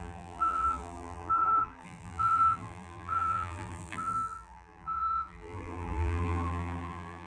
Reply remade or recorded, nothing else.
remade